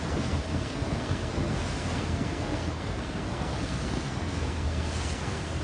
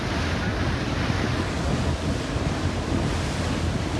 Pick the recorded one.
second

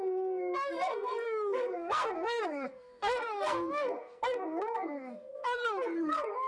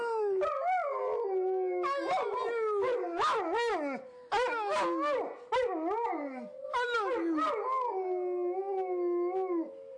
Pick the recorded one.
second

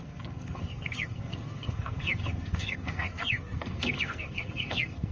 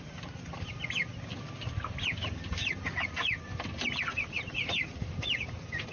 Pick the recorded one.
second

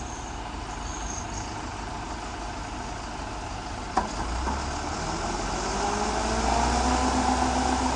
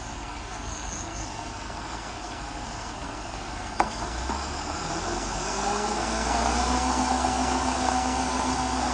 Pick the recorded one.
first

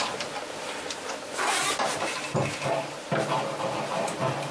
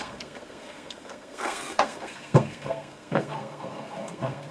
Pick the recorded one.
first